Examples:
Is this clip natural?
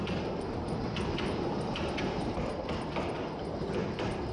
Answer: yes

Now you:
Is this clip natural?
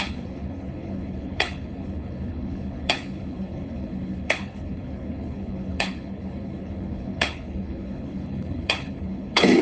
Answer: no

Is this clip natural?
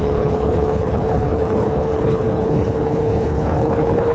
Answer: no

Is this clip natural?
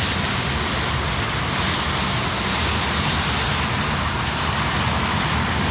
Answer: yes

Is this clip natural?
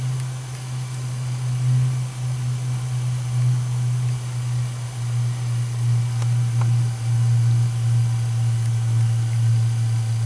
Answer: yes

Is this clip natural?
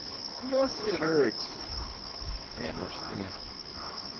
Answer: no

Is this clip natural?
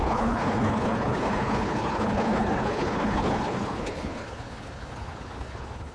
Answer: no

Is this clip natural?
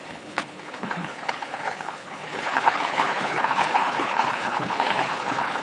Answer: no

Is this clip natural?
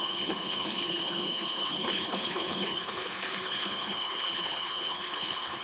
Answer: no